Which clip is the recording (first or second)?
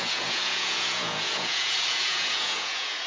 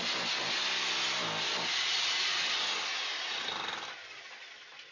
second